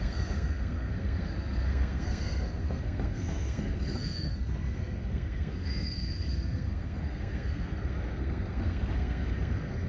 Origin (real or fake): fake